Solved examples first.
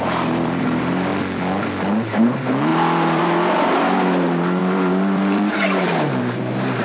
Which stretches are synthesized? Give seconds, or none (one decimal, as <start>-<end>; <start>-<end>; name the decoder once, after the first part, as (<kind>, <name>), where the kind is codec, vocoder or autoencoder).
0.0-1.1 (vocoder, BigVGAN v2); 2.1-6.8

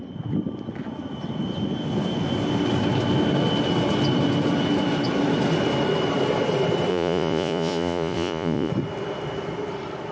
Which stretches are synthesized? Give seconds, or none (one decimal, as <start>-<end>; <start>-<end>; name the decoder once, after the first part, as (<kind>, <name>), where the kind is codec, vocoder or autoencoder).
6.9-8.7 (vocoder, Vocos)

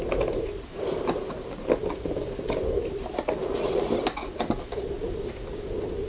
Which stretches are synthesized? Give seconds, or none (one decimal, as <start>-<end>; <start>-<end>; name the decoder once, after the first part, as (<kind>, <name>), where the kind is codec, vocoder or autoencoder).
3.4-3.9 (vocoder, Vocos)

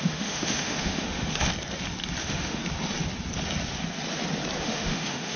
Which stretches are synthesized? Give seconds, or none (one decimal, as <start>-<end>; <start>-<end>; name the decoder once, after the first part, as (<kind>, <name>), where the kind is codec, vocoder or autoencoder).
0.0-1.5 (autoencoder, DAC-VAE); 2.2-2.6; 4.6-5.4

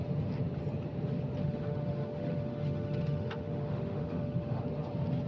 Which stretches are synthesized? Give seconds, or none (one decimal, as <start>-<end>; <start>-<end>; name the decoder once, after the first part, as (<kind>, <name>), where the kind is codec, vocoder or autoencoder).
1.4-4.6 (autoencoder, DAC-VAE)

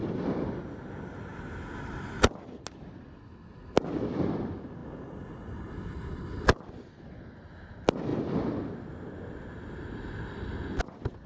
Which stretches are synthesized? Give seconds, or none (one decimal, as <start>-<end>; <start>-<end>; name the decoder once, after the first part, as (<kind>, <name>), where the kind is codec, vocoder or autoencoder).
none